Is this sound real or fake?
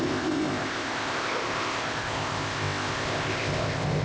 fake